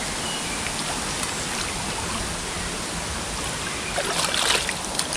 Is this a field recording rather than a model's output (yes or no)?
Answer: yes